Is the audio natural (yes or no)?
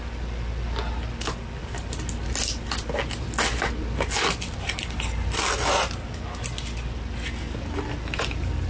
yes